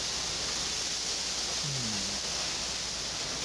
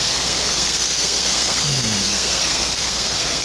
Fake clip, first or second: second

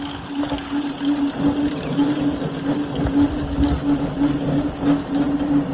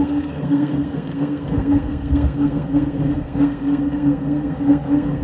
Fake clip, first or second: second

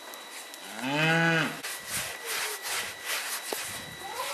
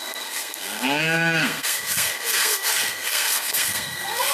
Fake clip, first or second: second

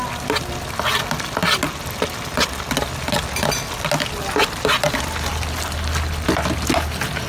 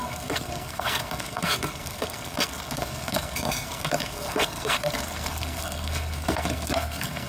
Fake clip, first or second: second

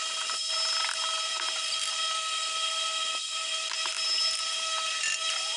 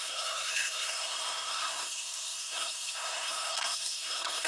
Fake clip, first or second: second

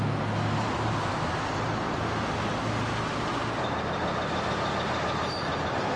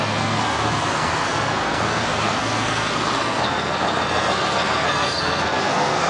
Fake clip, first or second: second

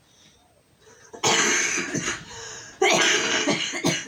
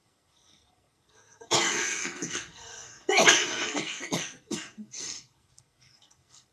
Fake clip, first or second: second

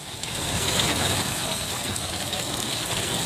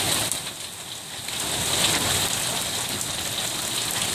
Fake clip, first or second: first